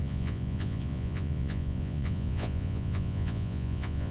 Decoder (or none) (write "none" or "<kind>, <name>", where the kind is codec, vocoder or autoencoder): vocoder, Vocos